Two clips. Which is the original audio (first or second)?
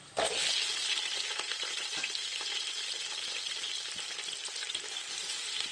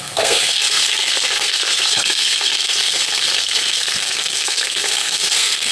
first